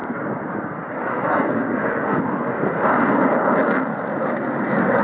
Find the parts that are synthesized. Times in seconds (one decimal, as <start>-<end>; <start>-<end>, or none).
1.1-2.2